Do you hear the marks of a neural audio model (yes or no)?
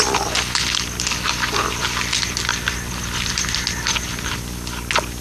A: no